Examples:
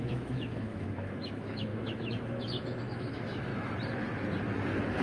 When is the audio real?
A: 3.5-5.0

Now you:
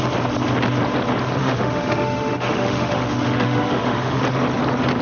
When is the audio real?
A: 0.0-1.4; 4.2-5.0

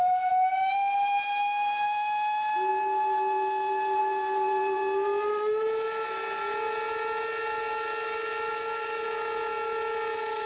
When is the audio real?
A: 0.0-10.5

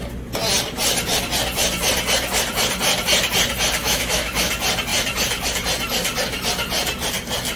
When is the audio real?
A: 0.0-3.8; 4.5-7.6

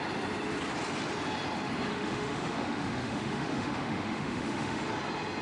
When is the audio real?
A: 0.0-1.9; 4.8-5.4

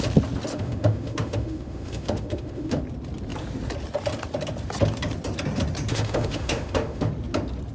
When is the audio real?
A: 0.0-0.5; 2.8-5.9; 7.1-7.7

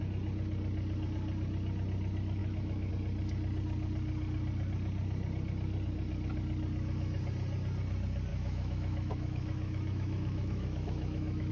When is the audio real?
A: 0.0-2.4; 2.9-8.3